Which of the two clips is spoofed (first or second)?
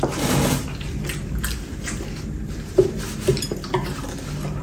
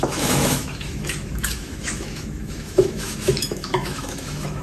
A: second